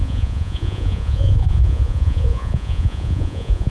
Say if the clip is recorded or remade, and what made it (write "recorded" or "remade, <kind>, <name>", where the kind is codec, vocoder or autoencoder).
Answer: remade, vocoder, Vocos